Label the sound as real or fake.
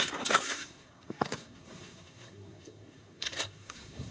fake